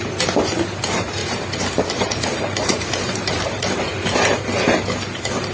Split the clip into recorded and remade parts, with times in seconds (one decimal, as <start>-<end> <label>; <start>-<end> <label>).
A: 0.0-1.2 recorded; 1.2-3.8 remade; 3.8-5.5 recorded